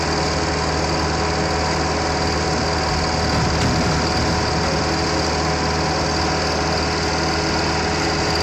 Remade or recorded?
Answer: recorded